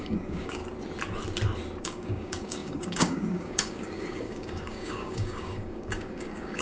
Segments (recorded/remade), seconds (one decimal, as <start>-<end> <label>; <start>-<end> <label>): 0.0-0.6 remade; 0.6-1.8 recorded; 1.8-6.6 remade